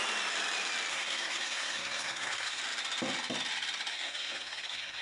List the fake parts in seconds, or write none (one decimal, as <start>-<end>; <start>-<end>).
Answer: 0.9-2.6; 3.9-5.0